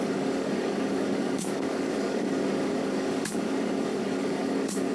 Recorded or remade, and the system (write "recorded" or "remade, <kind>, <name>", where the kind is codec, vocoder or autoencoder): remade, codec, DAC